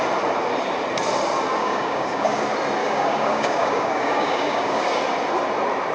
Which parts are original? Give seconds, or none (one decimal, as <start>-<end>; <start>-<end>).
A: 0.0-1.6; 2.4-2.8; 5.0-5.9